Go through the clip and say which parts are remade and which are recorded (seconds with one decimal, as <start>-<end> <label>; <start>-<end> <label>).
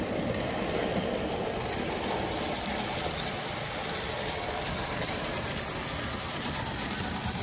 0.0-7.4 recorded